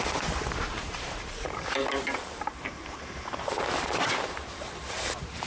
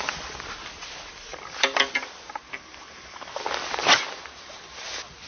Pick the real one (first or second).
second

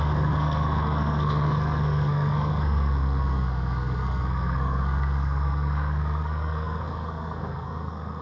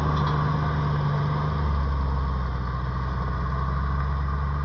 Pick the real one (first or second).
second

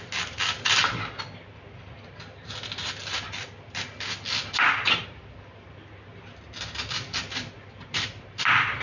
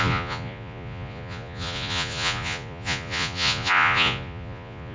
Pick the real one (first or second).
first